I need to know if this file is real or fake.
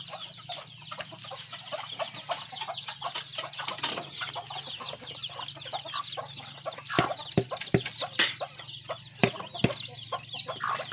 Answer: real